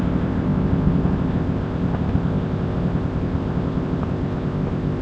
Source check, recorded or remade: remade